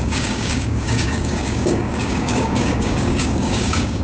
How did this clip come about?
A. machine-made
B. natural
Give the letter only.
A